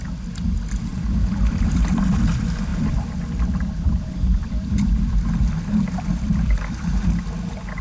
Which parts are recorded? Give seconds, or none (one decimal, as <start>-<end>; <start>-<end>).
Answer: 0.0-0.9; 2.0-2.7; 7.0-7.8